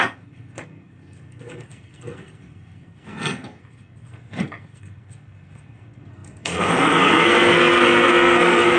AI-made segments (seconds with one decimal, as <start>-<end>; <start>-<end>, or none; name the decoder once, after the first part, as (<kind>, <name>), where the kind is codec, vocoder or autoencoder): 0.0-8.8 (codec, SNAC)